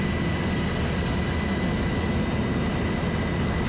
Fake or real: real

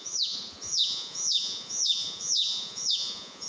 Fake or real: fake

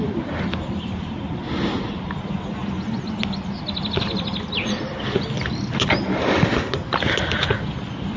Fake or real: real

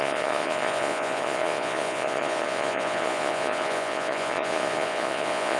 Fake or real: fake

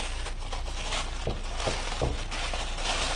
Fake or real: real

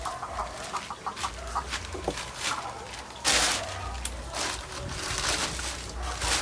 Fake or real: real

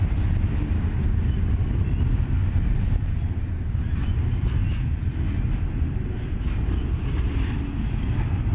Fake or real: real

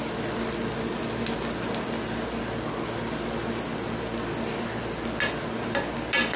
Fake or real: real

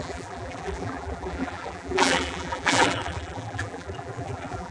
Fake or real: fake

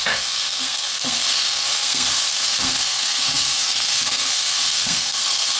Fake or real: fake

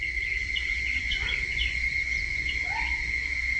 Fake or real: fake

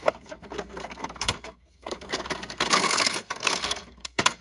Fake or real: fake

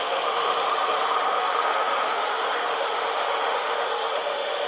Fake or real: fake